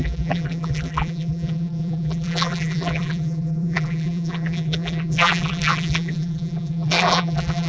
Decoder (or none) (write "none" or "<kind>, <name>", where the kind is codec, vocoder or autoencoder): vocoder, BigVGAN v2